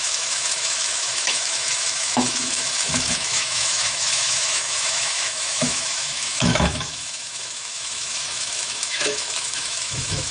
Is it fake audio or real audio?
fake